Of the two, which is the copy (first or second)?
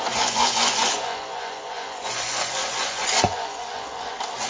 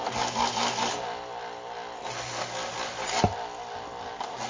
first